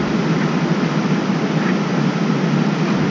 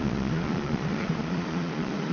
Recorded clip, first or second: first